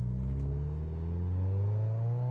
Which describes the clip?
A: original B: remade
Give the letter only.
A